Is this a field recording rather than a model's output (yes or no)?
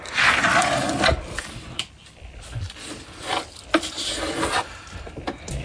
yes